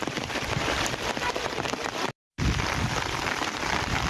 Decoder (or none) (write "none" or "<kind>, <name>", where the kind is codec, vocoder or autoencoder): vocoder, BigVGAN v2